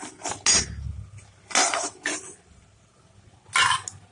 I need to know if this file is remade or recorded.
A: recorded